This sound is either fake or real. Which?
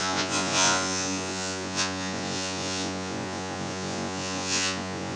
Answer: fake